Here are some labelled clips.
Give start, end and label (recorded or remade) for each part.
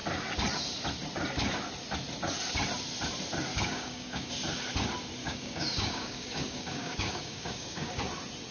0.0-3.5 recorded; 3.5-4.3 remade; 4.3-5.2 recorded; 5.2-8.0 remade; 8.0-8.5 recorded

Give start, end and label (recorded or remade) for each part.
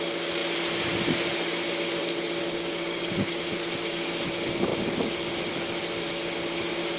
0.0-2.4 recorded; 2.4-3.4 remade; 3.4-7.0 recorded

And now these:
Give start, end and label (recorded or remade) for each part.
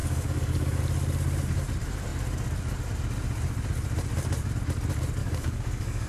0.0-0.8 remade; 0.8-5.2 recorded; 5.2-6.1 remade